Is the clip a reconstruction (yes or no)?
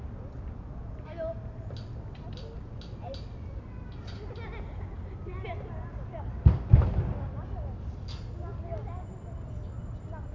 no